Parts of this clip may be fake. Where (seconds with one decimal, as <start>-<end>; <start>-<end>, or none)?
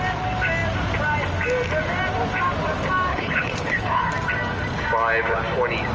3.1-4.1